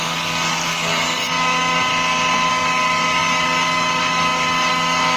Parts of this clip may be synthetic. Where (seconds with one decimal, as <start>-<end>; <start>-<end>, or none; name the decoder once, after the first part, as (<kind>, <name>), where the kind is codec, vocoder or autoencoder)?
0.0-1.9 (codec, DAC); 2.5-5.2